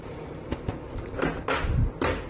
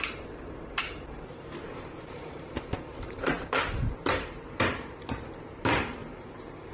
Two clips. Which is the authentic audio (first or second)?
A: first